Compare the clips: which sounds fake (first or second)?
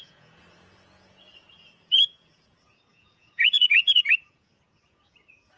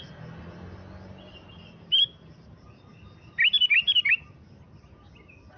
first